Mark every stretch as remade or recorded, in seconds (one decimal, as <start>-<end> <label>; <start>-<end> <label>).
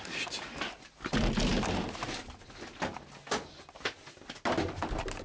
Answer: 0.0-5.2 recorded